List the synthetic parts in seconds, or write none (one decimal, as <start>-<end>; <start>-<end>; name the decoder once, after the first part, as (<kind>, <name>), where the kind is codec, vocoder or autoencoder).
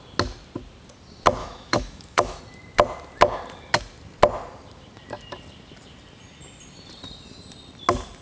1.4-2.4 (autoencoder, DAC-VAE)